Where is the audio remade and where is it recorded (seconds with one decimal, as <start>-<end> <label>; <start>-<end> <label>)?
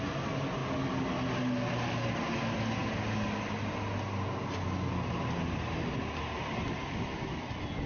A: 0.0-7.9 recorded